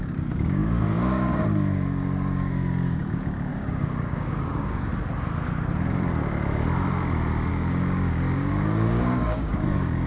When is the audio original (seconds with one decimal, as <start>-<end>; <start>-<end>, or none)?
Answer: 4.9-7.5